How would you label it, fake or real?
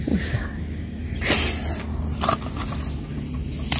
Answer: real